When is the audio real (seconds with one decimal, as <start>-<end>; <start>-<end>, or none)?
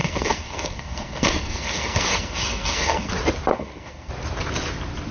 3.1-3.5; 4.1-5.1